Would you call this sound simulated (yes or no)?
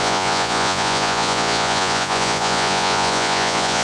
yes